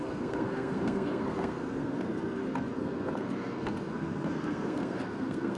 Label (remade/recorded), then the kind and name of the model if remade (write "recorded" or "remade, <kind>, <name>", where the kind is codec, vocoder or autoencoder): remade, codec, SNAC